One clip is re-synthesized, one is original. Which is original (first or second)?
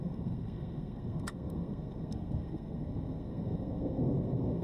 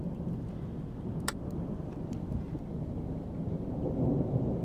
second